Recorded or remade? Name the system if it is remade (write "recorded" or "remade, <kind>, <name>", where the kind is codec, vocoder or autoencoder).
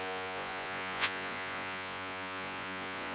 remade, vocoder, Vocos